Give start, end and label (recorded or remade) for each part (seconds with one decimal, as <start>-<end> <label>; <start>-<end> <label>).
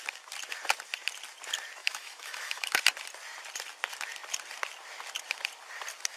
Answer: 0.0-1.8 recorded; 1.8-2.8 remade; 2.8-6.2 recorded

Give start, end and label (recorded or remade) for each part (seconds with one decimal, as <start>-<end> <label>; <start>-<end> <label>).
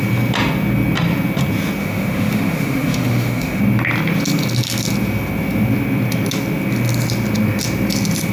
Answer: 0.0-1.8 recorded; 1.8-3.6 remade; 3.6-8.3 recorded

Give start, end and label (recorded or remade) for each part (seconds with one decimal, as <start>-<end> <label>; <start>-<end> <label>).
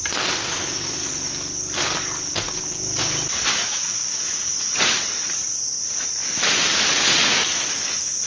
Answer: 0.0-0.4 recorded; 0.4-1.1 remade; 1.1-3.6 recorded; 3.6-4.7 remade; 4.7-7.2 recorded; 7.2-8.3 remade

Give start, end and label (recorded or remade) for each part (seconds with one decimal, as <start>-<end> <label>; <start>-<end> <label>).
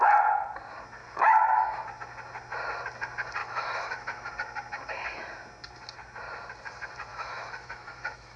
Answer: 0.0-1.0 recorded; 1.0-1.9 remade; 1.9-3.4 recorded; 3.4-4.3 remade; 4.3-7.1 recorded; 7.1-8.4 remade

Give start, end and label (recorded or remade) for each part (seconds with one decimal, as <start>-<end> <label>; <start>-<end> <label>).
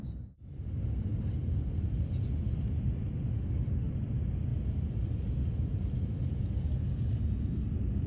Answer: 0.0-3.3 recorded; 3.3-3.9 remade; 3.9-8.1 recorded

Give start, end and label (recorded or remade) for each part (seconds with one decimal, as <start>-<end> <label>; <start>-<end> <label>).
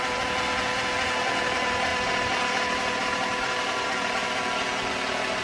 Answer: 0.0-5.4 recorded